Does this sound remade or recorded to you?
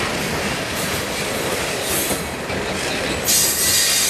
recorded